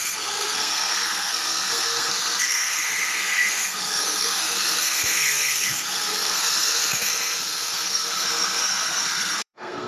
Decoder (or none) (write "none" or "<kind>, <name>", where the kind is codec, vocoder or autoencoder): codec, SNAC